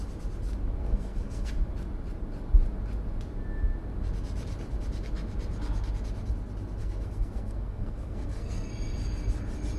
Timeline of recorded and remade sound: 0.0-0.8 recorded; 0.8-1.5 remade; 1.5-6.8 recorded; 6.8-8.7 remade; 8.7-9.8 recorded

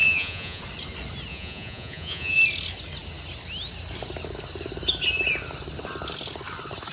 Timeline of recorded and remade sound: 0.0-0.6 remade; 0.6-1.3 recorded; 1.3-2.4 remade; 2.4-6.9 recorded

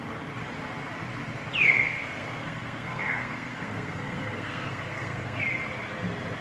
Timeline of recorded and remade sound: 0.0-1.6 recorded; 1.6-5.4 remade; 5.4-6.4 recorded

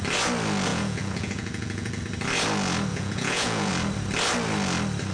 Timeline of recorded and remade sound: 0.0-0.7 recorded; 0.7-2.0 remade; 2.0-2.9 recorded; 2.9-3.7 remade; 3.7-5.1 recorded

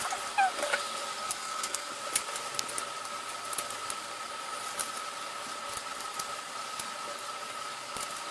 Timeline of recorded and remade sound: 0.0-1.2 recorded; 1.2-1.9 remade; 1.9-8.3 recorded

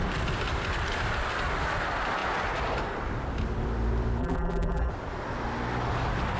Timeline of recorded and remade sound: 0.0-4.2 recorded; 4.2-4.9 remade; 4.9-6.4 recorded